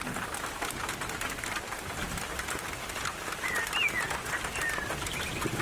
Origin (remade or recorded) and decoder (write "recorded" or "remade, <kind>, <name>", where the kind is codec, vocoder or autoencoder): recorded